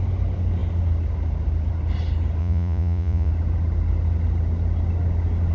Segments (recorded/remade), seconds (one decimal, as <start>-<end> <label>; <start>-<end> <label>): 0.0-2.4 recorded; 2.4-3.3 remade; 3.3-5.5 recorded